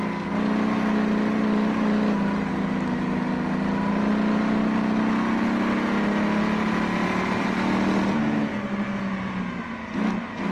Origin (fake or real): real